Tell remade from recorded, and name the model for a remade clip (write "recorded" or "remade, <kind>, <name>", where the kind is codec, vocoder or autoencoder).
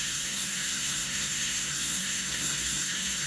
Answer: remade, codec, SNAC